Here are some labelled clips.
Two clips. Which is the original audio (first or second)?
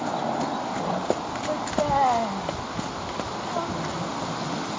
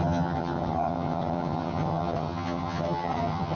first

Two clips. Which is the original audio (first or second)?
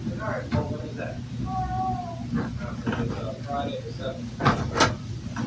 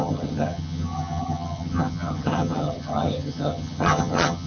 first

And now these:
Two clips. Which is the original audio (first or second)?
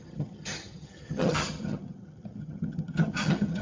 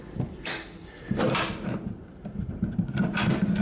second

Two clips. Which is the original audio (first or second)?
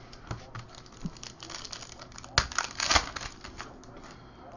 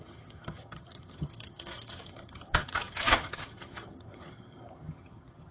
first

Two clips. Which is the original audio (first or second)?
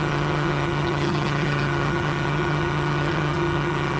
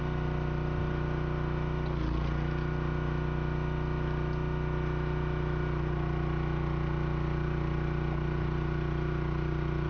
second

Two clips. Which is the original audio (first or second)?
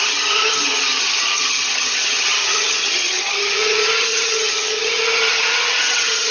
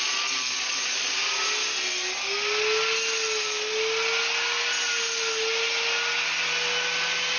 second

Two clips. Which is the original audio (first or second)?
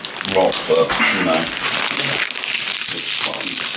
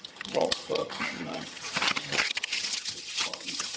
first